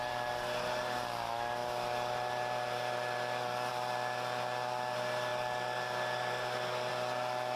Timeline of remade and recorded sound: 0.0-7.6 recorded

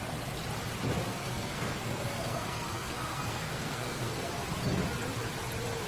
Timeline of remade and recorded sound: 0.0-1.1 recorded; 1.1-4.3 remade; 4.3-5.9 recorded

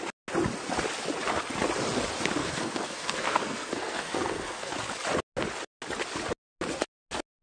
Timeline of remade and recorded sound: 0.0-2.4 recorded; 2.4-4.7 remade; 4.7-7.4 recorded

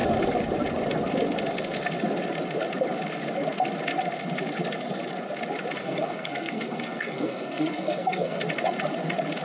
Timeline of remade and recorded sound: 0.0-5.8 recorded; 5.8-8.4 remade; 8.4-9.4 recorded